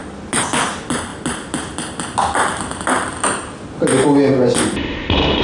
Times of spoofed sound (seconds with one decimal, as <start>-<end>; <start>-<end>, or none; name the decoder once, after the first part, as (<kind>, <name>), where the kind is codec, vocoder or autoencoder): none